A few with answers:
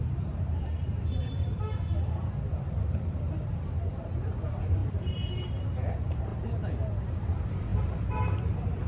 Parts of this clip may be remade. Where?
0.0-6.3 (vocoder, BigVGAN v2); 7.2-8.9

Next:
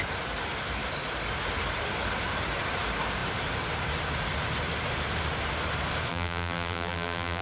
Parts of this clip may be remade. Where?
6.1-7.4 (vocoder, BigVGAN v2)

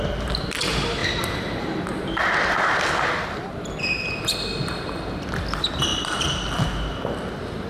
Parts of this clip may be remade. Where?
1.0-2.2 (vocoder, BigVGAN v2); 5.9-7.3

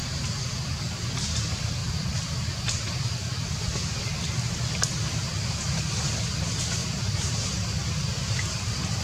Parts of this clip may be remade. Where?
1.8-3.9 (vocoder, BigVGAN v2); 6.8-8.0